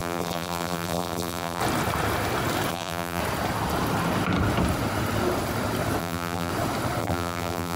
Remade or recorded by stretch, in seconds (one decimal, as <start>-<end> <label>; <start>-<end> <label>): 0.0-1.6 remade; 1.6-2.7 recorded; 2.7-3.2 remade; 3.2-6.0 recorded; 6.0-6.5 remade; 6.5-7.0 recorded; 7.0-7.8 remade